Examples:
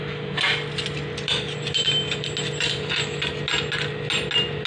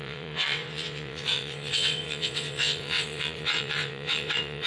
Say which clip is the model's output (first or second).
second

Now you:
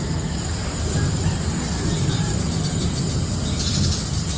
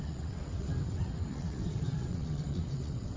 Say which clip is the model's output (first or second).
second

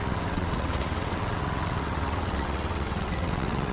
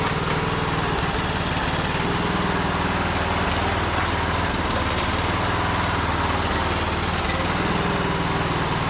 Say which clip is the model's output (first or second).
first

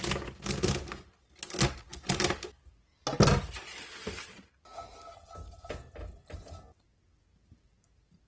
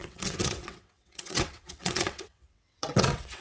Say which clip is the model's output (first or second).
second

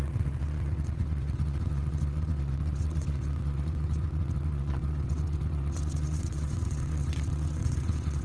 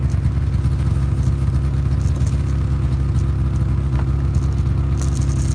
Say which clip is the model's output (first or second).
first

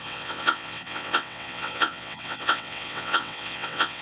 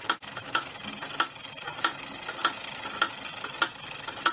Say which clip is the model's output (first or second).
first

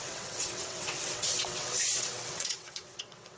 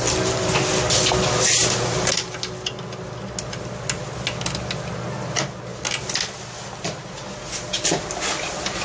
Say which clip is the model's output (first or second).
first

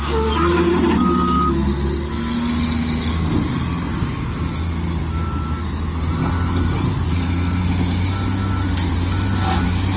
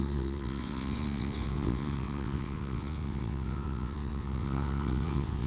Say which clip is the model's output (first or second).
second